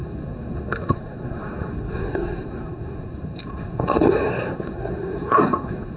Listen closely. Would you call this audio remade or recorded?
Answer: remade